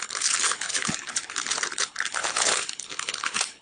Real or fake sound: fake